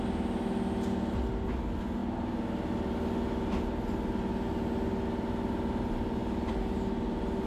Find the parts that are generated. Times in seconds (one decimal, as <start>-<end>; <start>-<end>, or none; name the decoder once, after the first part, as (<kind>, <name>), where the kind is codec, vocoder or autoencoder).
none